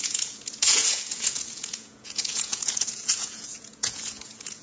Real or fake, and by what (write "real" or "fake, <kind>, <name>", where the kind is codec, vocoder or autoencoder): fake, vocoder, Vocos